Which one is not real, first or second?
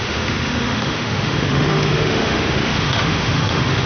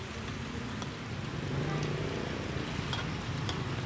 first